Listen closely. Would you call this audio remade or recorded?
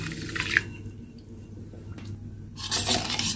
recorded